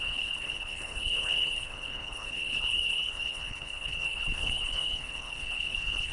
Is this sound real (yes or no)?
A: no